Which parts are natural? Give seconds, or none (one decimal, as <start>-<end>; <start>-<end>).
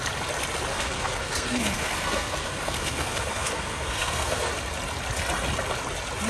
0.0-0.7; 4.5-6.3